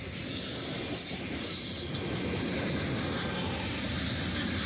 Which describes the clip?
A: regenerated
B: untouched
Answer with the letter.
B